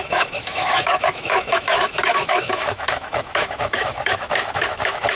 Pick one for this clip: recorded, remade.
remade